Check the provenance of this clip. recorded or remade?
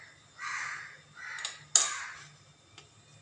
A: recorded